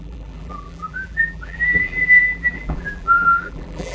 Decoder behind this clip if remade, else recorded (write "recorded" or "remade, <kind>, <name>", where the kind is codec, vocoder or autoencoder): remade, vocoder, BigVGAN v2